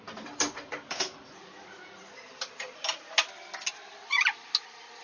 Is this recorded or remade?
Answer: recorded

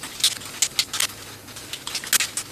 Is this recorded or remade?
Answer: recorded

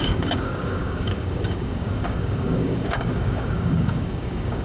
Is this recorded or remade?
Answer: remade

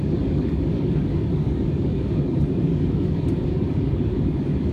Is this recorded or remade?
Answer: remade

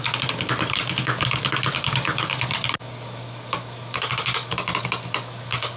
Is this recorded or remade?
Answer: remade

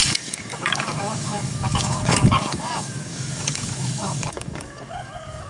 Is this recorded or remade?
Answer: remade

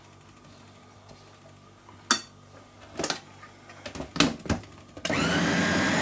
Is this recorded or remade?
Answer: recorded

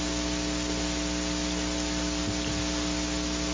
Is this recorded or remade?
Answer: recorded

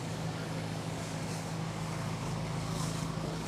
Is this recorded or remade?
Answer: remade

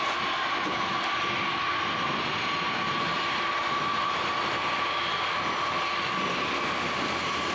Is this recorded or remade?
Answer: recorded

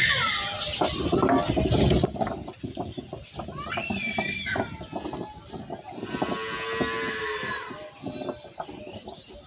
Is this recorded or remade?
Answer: recorded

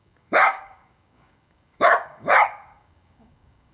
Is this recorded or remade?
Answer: remade